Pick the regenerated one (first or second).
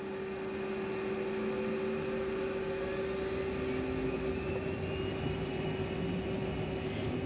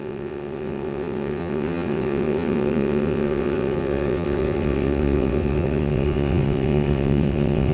second